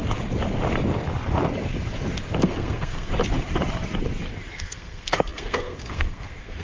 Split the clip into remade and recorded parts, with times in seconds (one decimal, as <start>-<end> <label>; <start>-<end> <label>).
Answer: 0.0-2.4 recorded; 2.4-3.1 remade; 3.1-4.5 recorded; 4.5-6.6 remade

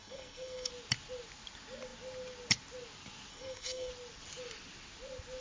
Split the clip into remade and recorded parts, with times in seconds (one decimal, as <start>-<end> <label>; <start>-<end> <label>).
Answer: 0.0-0.7 remade; 0.7-3.3 recorded; 3.3-3.9 remade; 3.9-5.4 recorded

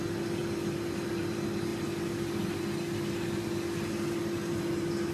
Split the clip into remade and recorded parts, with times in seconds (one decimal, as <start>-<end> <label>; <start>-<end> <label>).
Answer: 0.0-5.1 recorded

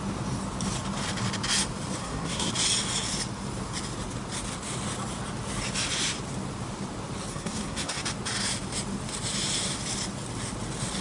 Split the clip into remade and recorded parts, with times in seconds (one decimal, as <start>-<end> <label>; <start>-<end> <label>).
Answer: 0.0-2.0 recorded; 2.0-2.5 remade; 2.5-7.3 recorded; 7.3-8.0 remade; 8.0-11.0 recorded

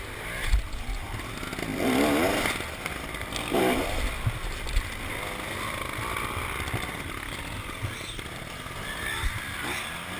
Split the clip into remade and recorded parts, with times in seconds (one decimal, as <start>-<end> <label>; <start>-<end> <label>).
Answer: 0.0-10.2 recorded